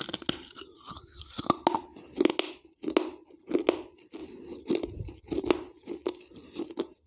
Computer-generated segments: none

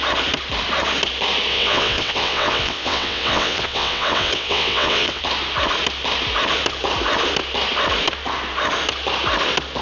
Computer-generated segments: 1.5-5.2 (vocoder, WaveNeXt)